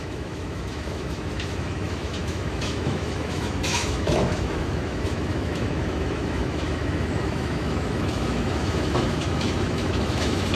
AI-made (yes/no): yes